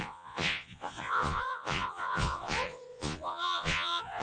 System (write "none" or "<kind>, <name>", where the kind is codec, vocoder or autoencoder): vocoder, Vocos